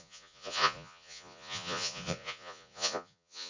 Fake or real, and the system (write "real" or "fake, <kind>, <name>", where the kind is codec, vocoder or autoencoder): fake, vocoder, Vocos